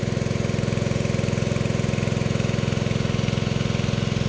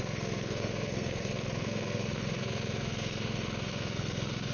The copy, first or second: second